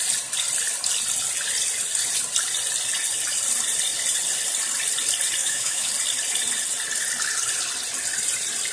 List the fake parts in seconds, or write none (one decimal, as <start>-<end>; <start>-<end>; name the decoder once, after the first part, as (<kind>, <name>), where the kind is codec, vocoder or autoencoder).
5.4-5.9 (autoencoder, DAC-VAE)